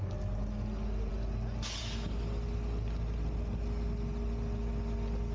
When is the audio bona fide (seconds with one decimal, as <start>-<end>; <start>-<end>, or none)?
0.0-5.3